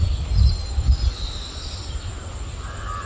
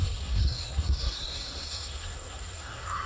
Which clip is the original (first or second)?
first